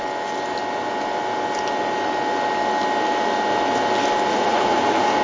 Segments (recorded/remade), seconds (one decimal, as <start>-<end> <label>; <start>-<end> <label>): 0.0-4.3 recorded; 4.3-5.2 remade